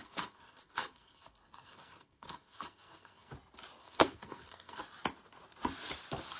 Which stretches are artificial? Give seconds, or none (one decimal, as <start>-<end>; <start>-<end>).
0.0-3.3; 3.8-4.8